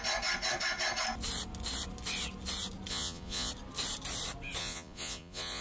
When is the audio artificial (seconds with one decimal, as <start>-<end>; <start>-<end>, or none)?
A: 2.9-3.5; 4.6-5.6